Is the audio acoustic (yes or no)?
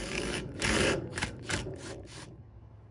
no